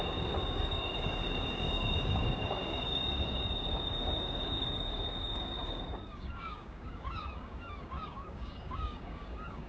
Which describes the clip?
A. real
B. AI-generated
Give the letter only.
B